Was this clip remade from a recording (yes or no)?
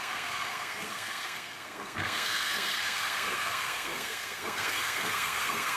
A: yes